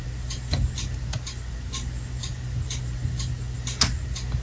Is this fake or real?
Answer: real